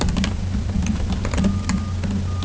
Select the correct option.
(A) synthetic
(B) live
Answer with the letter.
B